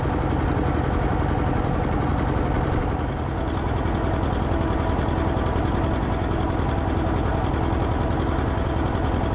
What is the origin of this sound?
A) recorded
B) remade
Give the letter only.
A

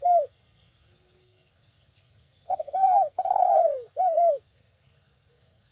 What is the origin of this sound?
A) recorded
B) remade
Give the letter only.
B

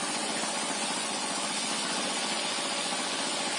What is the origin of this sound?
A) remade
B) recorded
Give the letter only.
A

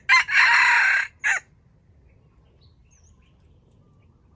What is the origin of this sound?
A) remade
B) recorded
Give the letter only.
B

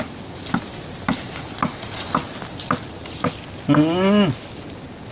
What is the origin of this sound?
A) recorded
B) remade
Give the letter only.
A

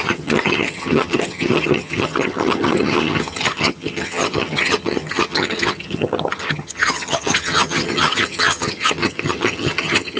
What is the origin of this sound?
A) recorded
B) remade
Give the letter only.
B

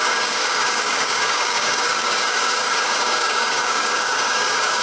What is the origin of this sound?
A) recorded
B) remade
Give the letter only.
B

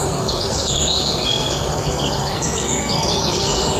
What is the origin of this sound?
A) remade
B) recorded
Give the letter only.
A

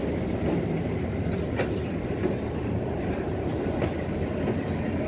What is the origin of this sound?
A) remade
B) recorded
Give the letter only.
B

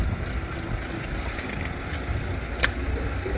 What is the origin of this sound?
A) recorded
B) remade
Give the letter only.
A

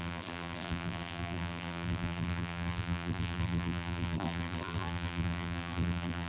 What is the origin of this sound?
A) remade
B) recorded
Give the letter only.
A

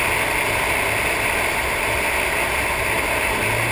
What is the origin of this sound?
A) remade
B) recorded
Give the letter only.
B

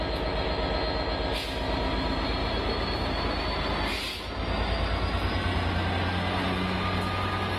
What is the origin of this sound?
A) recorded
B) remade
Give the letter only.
A